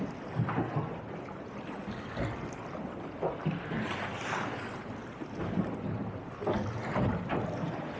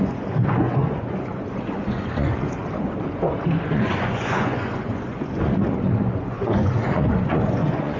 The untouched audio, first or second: first